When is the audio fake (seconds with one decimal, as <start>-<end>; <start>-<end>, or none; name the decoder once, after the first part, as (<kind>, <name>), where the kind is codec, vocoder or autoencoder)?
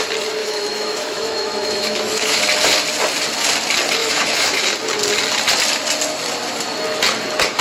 0.4-2.4 (autoencoder, DAC-VAE); 4.0-4.6